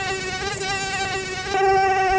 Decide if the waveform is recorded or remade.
recorded